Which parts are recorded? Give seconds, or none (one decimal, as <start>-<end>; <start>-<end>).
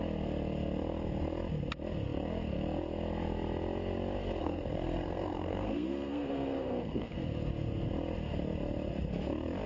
0.0-4.4; 7.1-9.7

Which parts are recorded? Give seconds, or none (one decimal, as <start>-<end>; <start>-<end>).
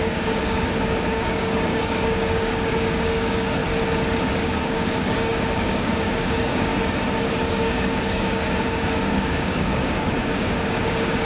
3.6-4.2; 6.7-7.5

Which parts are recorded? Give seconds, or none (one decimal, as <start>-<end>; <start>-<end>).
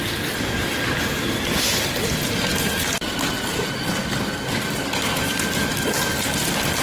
0.0-6.8